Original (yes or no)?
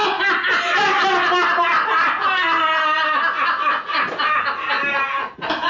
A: yes